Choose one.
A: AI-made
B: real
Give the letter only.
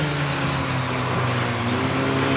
B